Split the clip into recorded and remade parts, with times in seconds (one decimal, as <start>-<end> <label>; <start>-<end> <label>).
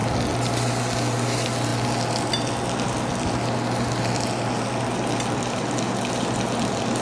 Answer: 0.0-7.0 recorded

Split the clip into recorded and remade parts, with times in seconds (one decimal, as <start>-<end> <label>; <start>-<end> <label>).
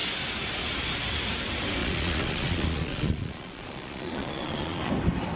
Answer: 0.0-1.8 recorded; 1.8-4.9 remade; 4.9-5.4 recorded